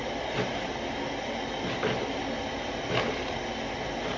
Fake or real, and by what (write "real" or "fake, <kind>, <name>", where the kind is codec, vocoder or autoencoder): real